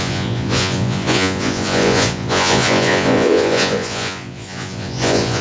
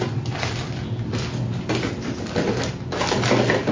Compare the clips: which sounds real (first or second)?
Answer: second